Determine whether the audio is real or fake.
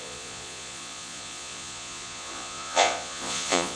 fake